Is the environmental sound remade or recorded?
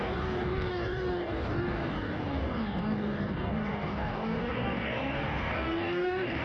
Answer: remade